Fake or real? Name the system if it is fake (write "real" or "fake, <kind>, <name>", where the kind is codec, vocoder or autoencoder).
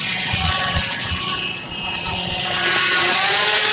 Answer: fake, vocoder, Vocos